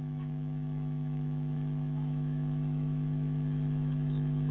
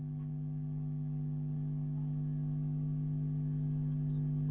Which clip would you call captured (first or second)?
second